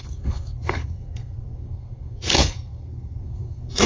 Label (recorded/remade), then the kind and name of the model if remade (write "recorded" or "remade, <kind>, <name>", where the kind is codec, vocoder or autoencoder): remade, codec, SNAC